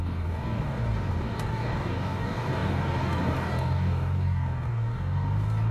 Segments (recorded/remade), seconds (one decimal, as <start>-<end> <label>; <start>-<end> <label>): 0.0-5.7 remade